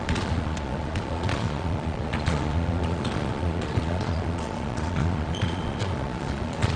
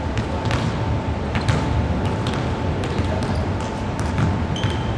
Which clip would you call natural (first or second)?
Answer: second